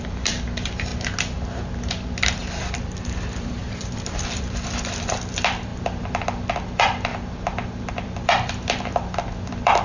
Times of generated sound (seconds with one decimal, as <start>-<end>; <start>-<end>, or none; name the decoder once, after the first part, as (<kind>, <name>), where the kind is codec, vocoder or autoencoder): 0.0-0.9 (vocoder, BigVGAN v2); 2.5-9.8